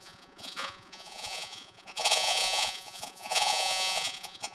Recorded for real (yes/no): no